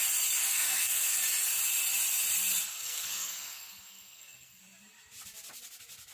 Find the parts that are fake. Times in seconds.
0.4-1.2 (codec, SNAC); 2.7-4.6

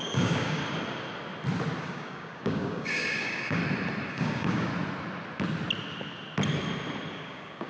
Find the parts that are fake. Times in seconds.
0.0-0.6 (codec, DAC); 1.8-3.6; 4.1-4.7; 7.1-7.7

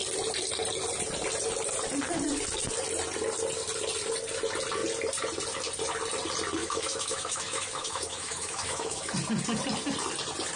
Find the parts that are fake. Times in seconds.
6.6-9.1 (autoencoder, DAC-VAE)

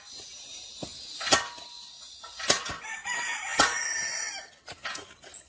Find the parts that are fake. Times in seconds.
none

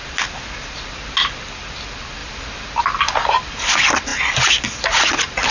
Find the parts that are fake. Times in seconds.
none

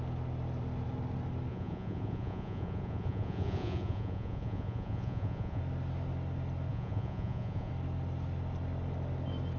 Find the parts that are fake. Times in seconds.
1.5-5.6 (vocoder, Vocos); 6.7-7.7